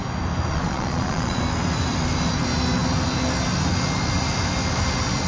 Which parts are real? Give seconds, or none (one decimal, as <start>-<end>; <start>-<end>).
0.0-0.5; 1.4-5.3